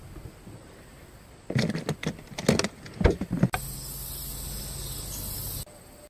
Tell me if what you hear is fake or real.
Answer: real